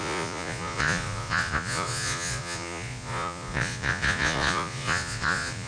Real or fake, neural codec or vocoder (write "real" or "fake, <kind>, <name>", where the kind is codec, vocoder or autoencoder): fake, vocoder, Vocos